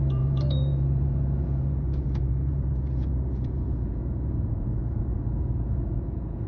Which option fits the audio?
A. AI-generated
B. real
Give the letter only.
A